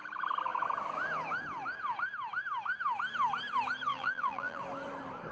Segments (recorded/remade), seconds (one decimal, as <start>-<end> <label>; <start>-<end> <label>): 0.0-3.9 recorded; 3.9-4.6 remade; 4.6-5.3 recorded